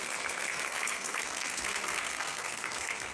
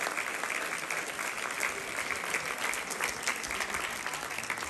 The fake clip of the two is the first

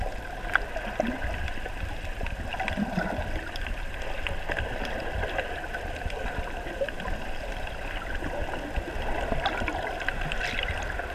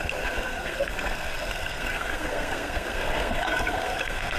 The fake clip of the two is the second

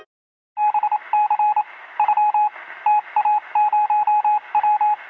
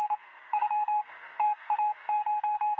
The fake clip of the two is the second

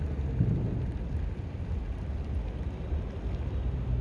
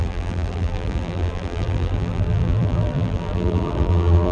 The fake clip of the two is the second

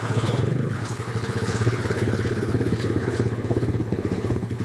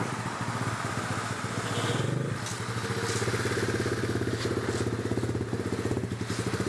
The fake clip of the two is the first